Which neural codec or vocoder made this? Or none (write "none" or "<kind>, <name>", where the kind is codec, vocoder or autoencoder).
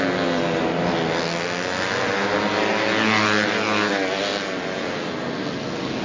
none